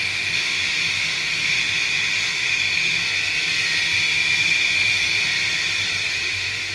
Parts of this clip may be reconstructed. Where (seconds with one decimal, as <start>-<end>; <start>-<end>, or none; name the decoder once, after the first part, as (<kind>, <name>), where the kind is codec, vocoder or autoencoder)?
0.0-3.0 (autoencoder, DAC-VAE); 4.4-5.3; 6.1-6.7